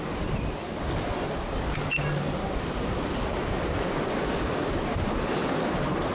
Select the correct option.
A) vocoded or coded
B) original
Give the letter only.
B